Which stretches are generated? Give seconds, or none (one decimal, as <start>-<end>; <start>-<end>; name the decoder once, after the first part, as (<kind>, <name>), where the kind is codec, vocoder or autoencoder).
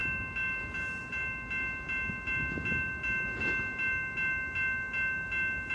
none